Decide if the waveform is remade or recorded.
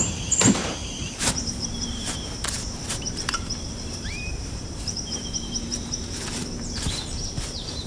remade